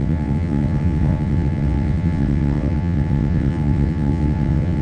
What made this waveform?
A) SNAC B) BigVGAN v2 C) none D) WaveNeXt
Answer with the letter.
D